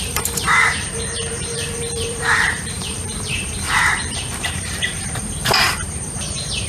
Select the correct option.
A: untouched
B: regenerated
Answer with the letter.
B